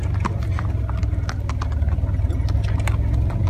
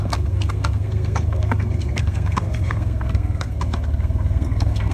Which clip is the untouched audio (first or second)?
first